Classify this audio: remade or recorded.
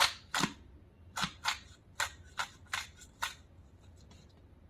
recorded